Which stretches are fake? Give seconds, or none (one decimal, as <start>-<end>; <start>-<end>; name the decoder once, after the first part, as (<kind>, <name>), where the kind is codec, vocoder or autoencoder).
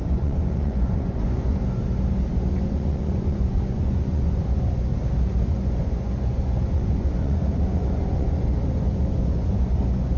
0.0-1.6 (vocoder, Vocos); 2.3-4.9; 5.5-10.2